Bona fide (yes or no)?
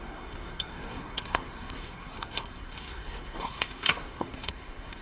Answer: no